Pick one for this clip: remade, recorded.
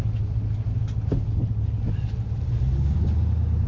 recorded